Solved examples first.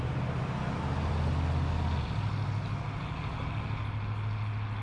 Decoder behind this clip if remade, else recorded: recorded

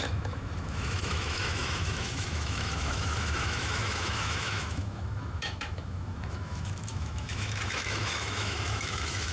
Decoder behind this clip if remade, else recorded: remade, autoencoder, DAC-VAE